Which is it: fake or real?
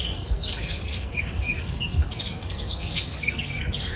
fake